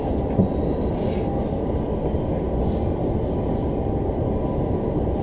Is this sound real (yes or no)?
yes